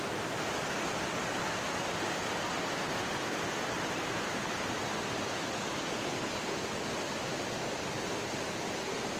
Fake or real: real